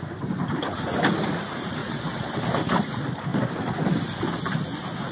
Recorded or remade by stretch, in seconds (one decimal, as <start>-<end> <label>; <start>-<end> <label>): 0.0-1.8 recorded; 1.8-2.4 remade; 2.4-5.1 recorded